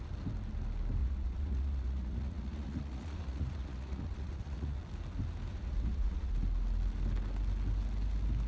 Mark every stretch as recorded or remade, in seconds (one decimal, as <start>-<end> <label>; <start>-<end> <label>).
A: 0.0-1.0 recorded; 1.0-4.8 remade; 4.8-5.5 recorded; 5.5-6.3 remade; 6.3-8.5 recorded